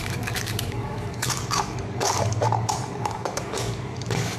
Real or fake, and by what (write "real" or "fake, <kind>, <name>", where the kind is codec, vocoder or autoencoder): fake, codec, DAC